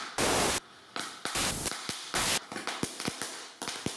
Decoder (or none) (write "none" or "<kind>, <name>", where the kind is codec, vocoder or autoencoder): none